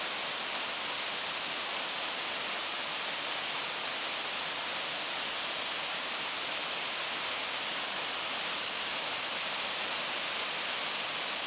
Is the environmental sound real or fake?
real